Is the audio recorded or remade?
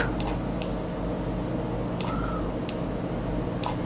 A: recorded